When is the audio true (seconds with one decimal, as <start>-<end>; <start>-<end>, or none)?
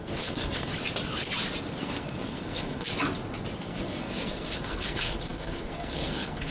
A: 0.7-1.8; 2.9-3.6